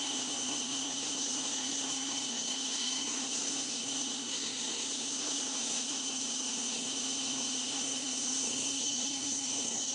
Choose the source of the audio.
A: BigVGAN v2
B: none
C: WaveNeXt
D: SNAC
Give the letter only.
D